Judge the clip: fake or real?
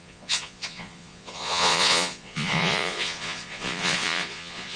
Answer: fake